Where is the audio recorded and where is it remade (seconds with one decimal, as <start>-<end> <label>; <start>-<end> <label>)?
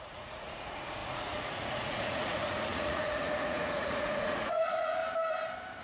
0.0-5.0 remade; 5.0-5.8 recorded